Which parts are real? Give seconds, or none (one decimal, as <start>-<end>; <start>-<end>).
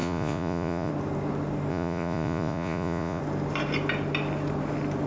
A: 0.9-1.7; 3.2-5.1